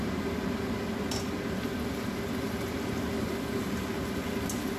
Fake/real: real